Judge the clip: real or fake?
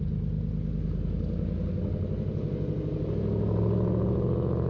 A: real